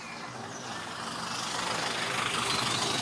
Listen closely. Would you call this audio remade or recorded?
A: recorded